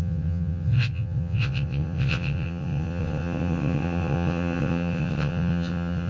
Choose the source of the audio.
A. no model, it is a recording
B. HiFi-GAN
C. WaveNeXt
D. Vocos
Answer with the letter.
C